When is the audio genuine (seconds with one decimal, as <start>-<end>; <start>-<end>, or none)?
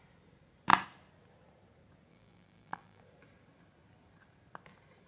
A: 0.0-2.1; 3.0-5.1